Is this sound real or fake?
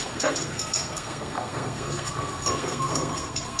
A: fake